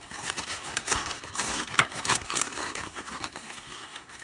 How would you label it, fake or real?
fake